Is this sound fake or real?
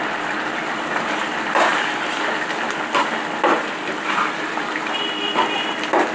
real